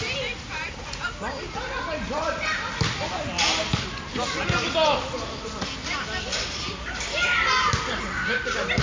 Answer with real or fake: real